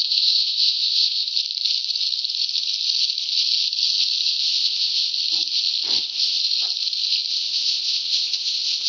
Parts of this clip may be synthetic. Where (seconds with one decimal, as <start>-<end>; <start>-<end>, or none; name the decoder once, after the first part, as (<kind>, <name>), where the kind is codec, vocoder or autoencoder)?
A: 0.0-1.3 (codec, ZipCodec); 4.4-5.1; 6.0-6.4; 7.3-8.9

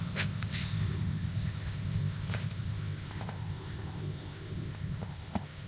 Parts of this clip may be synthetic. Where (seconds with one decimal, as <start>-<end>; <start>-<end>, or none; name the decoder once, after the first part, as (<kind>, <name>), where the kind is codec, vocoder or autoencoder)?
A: 0.0-5.7 (codec, ZipCodec)